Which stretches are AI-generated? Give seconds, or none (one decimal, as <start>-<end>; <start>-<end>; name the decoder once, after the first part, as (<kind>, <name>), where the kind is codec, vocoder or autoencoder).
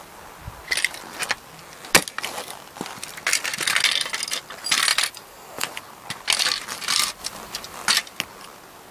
4.9-5.8 (vocoder, BigVGAN v2)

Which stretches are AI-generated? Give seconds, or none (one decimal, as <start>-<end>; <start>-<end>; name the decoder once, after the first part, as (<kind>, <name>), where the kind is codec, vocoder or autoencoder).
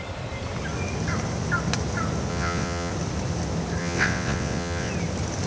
2.3-2.9 (vocoder, WaveNeXt); 3.8-4.9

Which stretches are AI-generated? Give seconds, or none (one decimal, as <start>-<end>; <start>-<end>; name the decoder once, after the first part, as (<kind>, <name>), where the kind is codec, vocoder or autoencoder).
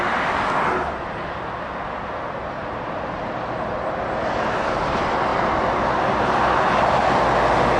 5.3-6.2 (vocoder, BigVGAN v2)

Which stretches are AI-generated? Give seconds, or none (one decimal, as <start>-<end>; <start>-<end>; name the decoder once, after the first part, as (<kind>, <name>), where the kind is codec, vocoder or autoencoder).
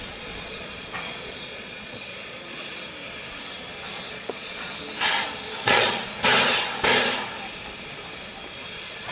0.0-2.7 (vocoder, Vocos); 4.1-4.7; 5.6-6.0; 8.7-9.1